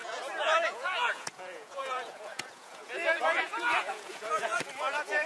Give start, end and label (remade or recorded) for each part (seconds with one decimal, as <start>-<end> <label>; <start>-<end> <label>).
0.0-5.3 remade